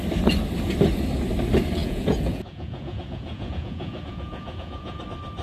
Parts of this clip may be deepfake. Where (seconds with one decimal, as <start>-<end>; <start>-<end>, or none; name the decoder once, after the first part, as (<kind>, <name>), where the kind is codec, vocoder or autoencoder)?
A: 1.8-5.0 (vocoder, Vocos)

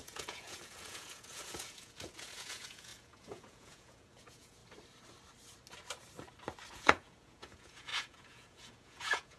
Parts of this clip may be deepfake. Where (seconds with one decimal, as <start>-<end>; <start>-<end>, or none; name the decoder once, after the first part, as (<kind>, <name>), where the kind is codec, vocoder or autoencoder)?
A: 0.0-4.6 (vocoder, Vocos); 6.7-9.4

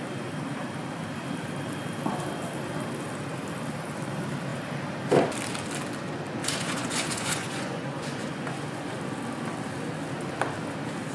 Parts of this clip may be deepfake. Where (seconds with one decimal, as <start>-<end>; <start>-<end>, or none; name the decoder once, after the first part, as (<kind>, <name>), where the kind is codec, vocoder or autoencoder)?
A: 6.4-9.0 (vocoder, Vocos)

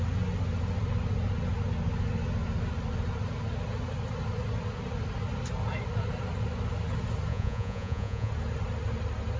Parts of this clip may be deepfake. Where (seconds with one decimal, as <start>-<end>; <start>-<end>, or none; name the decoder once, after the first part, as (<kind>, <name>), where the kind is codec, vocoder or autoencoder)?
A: 7.3-8.3 (vocoder, Vocos)

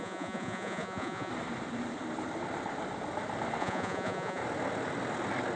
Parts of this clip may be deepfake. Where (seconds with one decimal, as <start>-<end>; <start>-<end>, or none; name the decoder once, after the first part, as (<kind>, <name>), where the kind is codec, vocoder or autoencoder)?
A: 0.0-1.3 (vocoder, Vocos); 3.6-4.4

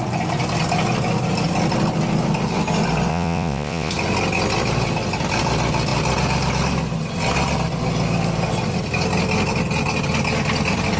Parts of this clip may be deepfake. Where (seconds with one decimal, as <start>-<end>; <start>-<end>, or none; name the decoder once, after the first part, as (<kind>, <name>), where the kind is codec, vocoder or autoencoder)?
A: 3.1-3.9 (vocoder, Vocos)

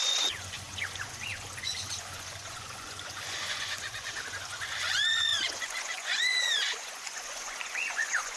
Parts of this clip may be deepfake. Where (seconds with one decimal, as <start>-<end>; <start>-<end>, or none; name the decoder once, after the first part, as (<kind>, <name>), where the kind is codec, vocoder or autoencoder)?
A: 0.0-8.4 (vocoder, Vocos)

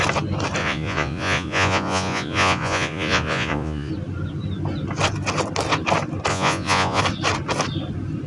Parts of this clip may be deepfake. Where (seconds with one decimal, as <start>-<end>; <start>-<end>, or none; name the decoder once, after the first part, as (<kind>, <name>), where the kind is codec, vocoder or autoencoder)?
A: 0.6-3.9 (vocoder, Vocos); 6.3-7.0